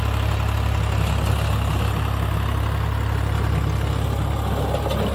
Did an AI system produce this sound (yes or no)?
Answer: no